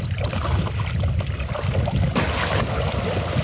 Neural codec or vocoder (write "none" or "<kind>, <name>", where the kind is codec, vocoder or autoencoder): none